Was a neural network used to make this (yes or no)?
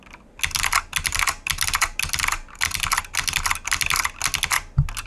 no